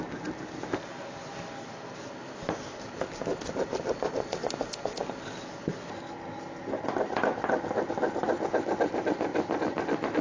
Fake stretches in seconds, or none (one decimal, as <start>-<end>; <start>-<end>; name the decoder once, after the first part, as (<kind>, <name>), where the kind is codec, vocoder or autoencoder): none